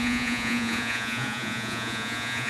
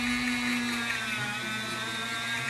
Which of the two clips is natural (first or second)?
second